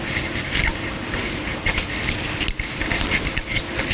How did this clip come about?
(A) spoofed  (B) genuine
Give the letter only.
B